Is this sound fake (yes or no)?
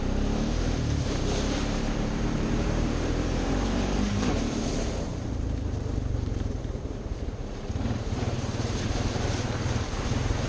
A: yes